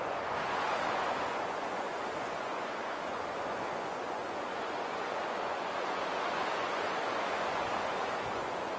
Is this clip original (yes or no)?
no